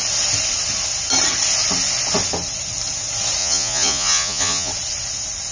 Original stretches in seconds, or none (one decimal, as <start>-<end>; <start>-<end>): 0.0-3.4; 4.7-5.5